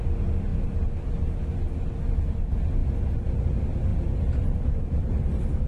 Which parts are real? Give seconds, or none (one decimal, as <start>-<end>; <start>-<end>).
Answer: 0.0-3.9